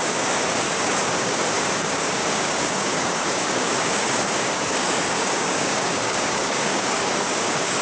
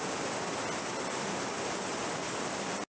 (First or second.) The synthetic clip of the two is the first